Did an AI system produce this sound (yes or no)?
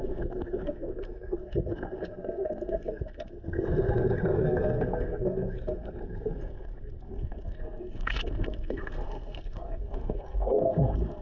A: yes